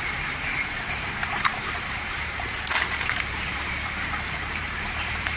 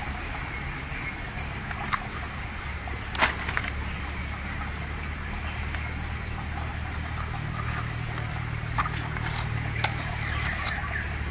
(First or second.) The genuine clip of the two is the second